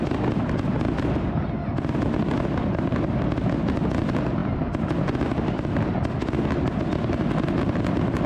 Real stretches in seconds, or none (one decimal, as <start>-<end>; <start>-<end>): 0.0-8.3